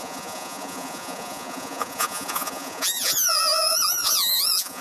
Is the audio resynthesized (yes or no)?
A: yes